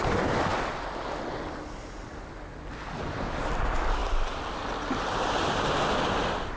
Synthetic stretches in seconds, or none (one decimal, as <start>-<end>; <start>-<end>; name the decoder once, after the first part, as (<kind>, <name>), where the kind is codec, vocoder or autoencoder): none